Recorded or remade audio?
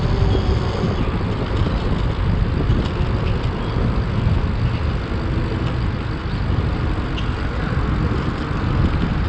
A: recorded